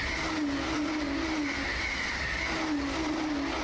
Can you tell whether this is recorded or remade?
recorded